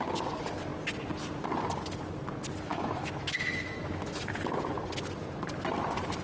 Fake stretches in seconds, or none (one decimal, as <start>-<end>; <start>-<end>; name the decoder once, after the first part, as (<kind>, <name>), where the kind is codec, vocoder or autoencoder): 2.7-4.2 (autoencoder, DAC-VAE)